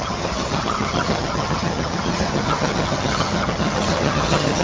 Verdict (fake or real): fake